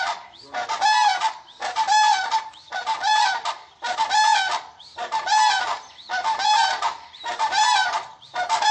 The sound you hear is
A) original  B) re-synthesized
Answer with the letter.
A